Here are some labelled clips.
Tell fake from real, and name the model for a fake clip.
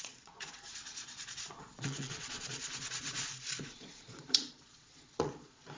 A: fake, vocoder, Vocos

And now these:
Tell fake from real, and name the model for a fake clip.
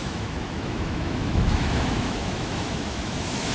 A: fake, autoencoder, DAC-VAE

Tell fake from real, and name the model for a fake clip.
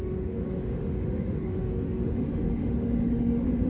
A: fake, autoencoder, DAC-VAE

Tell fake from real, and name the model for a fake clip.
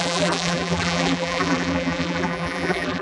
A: fake, vocoder, BigVGAN v2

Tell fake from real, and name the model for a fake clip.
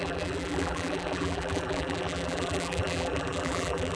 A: fake, vocoder, BigVGAN v2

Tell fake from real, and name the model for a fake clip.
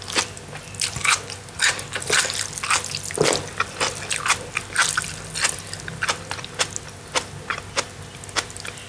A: real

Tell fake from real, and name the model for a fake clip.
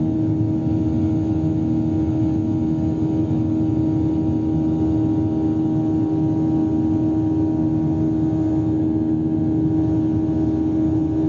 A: real